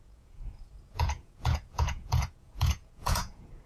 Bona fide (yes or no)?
no